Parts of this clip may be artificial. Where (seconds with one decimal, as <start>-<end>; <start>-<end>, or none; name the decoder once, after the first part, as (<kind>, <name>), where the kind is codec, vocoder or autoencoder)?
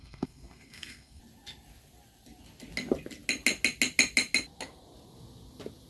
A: 0.0-1.2 (codec, SNAC)